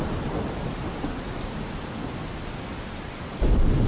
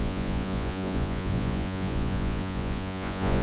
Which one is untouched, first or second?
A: first